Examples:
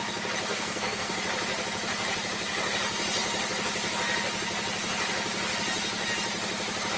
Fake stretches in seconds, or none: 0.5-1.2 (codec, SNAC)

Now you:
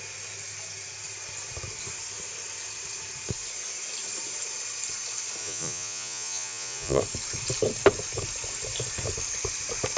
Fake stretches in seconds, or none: 5.4-7.0 (vocoder, Vocos)

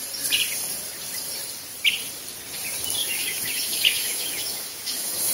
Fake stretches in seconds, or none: 3.0-5.3 (autoencoder, DAC-VAE)